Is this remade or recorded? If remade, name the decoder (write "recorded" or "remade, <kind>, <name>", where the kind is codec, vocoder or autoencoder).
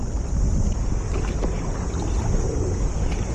recorded